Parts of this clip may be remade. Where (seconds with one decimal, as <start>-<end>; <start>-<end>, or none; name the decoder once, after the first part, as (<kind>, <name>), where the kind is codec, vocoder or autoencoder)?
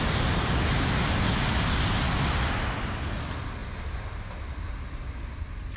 none